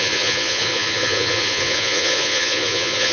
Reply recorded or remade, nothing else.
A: remade